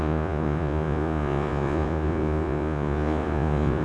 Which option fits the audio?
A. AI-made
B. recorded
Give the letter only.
A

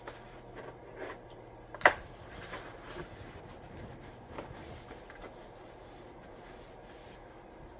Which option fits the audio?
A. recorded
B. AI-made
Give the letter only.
B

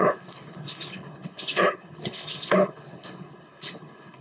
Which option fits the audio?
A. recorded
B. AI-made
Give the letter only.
B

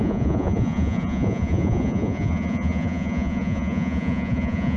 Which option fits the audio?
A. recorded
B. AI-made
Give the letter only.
B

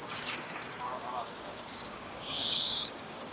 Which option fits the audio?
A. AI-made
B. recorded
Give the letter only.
A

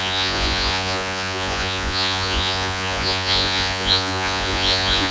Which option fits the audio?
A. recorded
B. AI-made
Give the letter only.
B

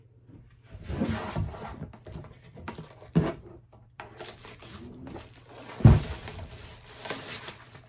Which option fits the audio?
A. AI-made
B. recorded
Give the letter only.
A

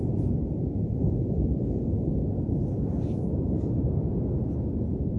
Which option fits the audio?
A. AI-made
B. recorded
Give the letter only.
B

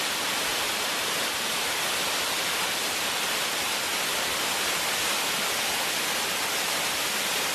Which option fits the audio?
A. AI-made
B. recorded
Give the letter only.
B